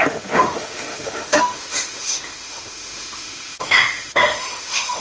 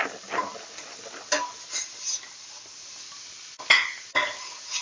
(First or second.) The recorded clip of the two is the second